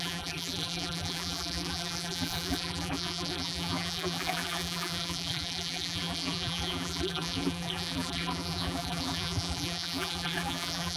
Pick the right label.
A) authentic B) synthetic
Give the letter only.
B